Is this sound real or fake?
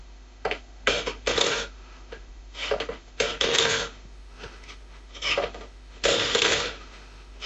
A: fake